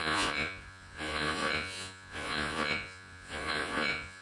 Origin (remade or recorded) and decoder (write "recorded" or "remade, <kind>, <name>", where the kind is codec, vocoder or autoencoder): remade, vocoder, Vocos